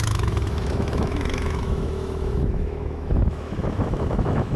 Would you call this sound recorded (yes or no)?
no